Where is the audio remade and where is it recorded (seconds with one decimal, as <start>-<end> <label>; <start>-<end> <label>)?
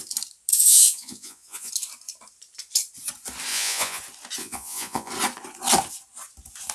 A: 0.0-0.5 recorded; 0.5-1.7 remade; 1.7-3.5 recorded; 3.5-4.0 remade; 4.0-4.4 recorded; 4.4-5.1 remade; 5.1-6.7 recorded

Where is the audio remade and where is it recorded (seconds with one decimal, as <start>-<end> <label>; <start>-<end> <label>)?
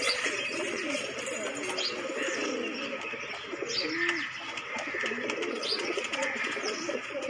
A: 0.0-1.1 remade; 1.1-5.5 recorded; 5.5-7.3 remade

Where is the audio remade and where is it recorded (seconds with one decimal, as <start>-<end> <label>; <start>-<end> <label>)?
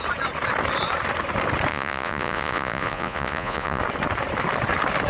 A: 0.0-1.7 recorded; 1.7-3.8 remade; 3.8-5.1 recorded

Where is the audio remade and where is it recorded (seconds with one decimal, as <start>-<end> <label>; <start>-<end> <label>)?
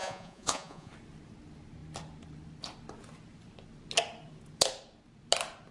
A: 0.0-0.9 remade; 0.9-5.7 recorded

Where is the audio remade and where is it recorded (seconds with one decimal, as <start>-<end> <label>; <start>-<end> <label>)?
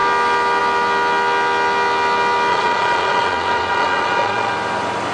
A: 0.0-2.5 recorded; 2.5-4.5 remade; 4.5-5.1 recorded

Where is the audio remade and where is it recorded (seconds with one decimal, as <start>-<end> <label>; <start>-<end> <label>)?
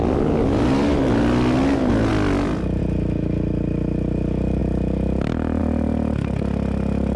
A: 0.0-7.2 recorded